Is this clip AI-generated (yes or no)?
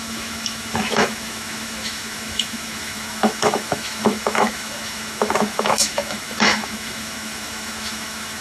yes